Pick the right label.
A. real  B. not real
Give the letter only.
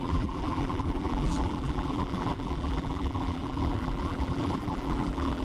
B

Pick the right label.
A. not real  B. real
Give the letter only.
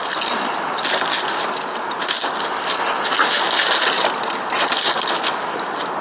B